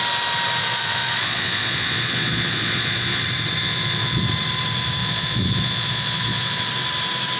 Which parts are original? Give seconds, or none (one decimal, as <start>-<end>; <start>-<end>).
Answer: 0.0-0.6; 3.2-3.6; 4.2-5.0; 6.7-7.4